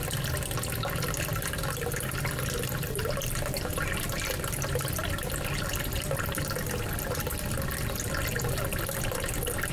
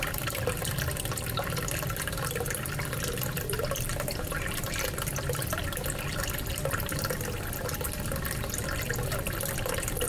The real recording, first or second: first